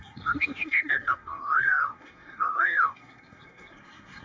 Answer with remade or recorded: remade